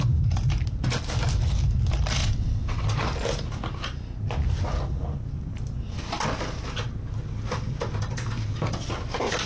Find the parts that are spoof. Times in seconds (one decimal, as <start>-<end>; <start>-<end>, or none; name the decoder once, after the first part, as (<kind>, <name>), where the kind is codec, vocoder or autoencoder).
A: 2.2-2.8 (vocoder, WaveNeXt)

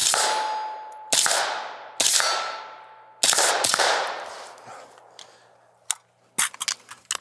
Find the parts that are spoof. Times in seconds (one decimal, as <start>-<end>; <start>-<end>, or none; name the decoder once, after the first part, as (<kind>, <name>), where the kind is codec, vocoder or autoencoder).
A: none

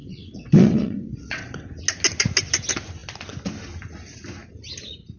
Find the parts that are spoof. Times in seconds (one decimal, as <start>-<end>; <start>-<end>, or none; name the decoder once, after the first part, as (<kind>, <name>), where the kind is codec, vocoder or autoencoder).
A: 0.0-1.8 (vocoder, WaveNeXt)

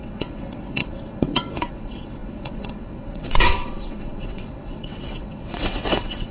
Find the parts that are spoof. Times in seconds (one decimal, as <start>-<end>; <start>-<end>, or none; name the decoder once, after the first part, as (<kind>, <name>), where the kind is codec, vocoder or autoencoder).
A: 0.0-6.3 (vocoder, WaveNeXt)

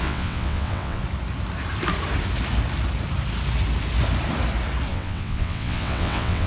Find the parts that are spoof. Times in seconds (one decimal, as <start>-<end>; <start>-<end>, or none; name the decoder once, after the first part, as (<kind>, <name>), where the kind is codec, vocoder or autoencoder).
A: 0.0-1.0 (vocoder, WaveNeXt); 4.9-6.5